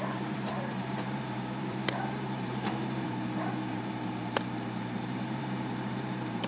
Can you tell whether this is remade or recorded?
remade